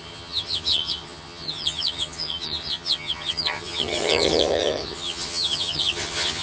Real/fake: fake